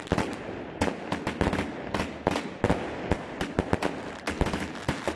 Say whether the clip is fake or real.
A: real